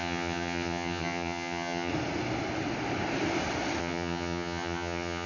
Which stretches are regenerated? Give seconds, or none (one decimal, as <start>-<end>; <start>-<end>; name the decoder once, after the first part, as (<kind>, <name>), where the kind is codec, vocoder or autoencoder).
0.0-1.9 (vocoder, HiFi-GAN); 3.8-5.3